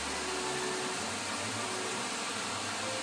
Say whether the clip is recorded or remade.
recorded